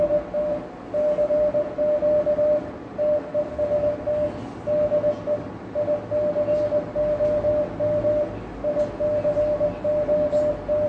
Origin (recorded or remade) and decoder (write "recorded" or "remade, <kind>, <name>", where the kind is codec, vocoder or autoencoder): recorded